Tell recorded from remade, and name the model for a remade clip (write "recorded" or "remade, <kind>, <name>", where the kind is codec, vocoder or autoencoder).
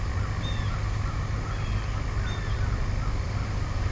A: recorded